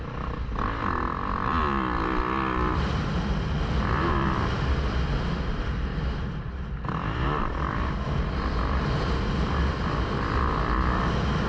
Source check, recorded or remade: recorded